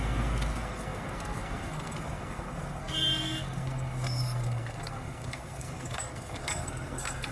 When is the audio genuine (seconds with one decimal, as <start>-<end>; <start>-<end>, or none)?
none